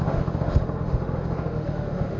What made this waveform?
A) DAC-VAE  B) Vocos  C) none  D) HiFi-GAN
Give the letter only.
A